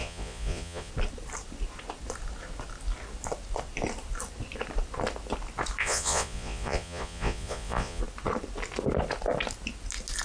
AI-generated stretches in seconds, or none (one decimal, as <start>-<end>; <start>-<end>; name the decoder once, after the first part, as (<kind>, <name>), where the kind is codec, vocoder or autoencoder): 0.0-0.9 (vocoder, Vocos); 5.8-8.0